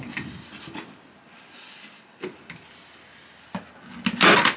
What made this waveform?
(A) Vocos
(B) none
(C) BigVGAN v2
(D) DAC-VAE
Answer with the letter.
B